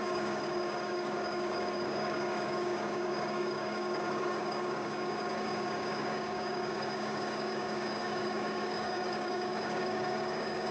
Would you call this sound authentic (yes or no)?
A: no